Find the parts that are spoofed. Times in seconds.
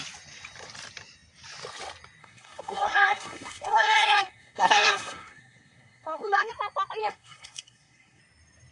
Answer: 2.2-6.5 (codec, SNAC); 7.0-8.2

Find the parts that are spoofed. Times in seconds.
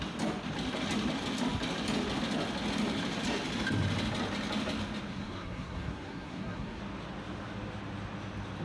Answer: 5.1-6.8 (codec, SNAC)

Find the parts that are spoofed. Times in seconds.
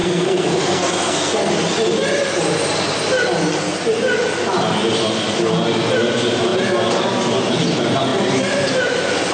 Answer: 0.0-1.5 (codec, SNAC)